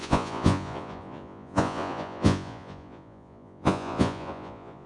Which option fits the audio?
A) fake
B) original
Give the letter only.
A